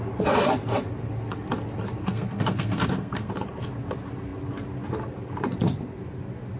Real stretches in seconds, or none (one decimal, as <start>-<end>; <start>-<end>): 0.0-2.0; 3.3-6.6